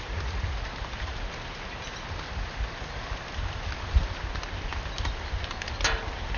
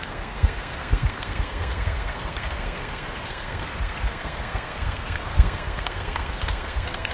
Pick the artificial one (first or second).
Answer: second